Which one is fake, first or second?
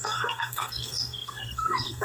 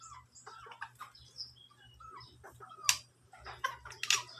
first